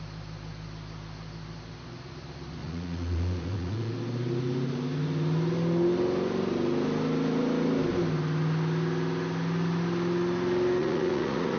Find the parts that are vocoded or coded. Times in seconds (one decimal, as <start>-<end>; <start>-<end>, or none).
2.6-3.9; 10.8-11.6

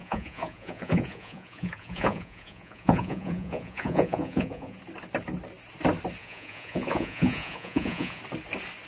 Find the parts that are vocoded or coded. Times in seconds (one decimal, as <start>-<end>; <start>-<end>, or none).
0.0-4.8; 6.2-8.2

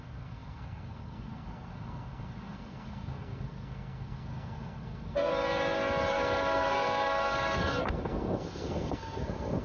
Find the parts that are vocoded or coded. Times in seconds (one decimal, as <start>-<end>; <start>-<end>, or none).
0.0-5.3; 6.1-9.6